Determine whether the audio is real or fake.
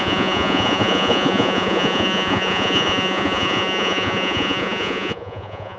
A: fake